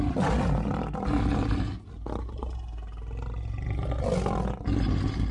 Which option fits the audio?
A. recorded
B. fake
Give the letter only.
A